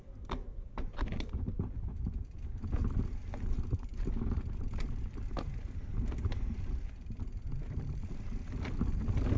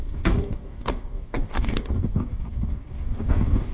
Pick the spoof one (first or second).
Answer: second